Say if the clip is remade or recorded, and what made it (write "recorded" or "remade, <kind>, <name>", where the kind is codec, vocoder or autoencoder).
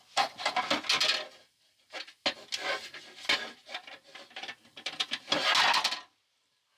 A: recorded